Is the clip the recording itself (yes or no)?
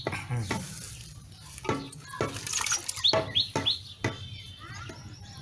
yes